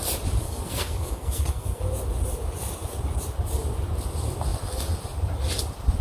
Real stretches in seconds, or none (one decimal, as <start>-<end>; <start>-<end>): 0.0-0.4; 1.8-6.0